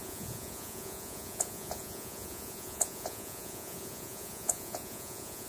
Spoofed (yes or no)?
yes